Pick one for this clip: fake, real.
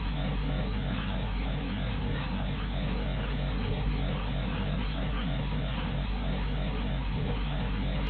fake